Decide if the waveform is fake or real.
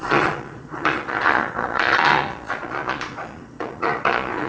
fake